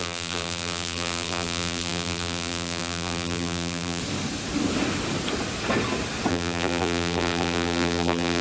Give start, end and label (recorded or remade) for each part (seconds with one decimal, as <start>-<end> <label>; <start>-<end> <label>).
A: 0.0-4.0 remade; 4.0-6.3 recorded; 6.3-8.4 remade